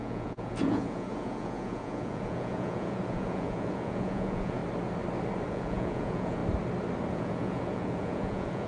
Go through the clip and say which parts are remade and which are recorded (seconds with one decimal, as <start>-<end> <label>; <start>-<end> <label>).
0.0-4.6 remade; 4.6-5.5 recorded; 5.5-6.4 remade; 6.4-7.1 recorded; 7.1-8.7 remade